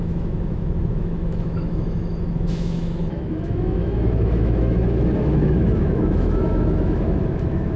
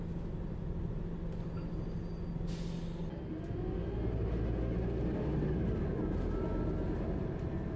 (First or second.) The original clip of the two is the second